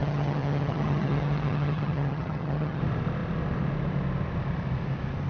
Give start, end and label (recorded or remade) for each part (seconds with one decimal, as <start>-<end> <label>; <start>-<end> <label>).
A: 0.0-2.8 remade; 2.8-5.3 recorded